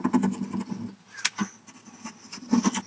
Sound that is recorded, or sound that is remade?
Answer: recorded